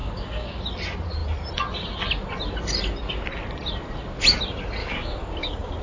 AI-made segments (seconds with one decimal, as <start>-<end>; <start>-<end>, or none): 0.0-0.6; 4.8-5.8